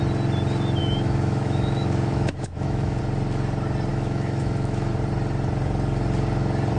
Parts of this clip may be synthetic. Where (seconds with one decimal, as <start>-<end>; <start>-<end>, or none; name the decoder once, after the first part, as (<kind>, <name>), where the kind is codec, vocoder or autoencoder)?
0.8-3.0 (autoencoder, DAC-VAE); 3.9-4.9